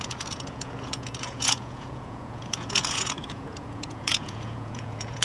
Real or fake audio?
fake